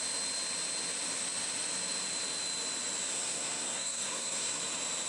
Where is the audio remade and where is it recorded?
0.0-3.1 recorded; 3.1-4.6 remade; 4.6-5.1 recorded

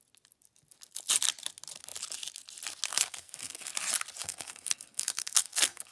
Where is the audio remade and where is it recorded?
0.0-2.9 recorded; 2.9-3.7 remade; 3.7-4.2 recorded; 4.2-5.9 remade